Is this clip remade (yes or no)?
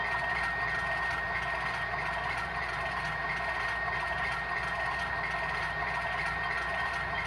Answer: no